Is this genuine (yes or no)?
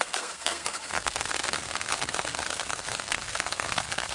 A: no